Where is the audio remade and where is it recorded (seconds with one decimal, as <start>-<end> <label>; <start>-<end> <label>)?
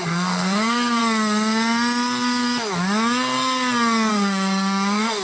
0.0-1.0 remade; 1.0-4.1 recorded; 4.1-5.2 remade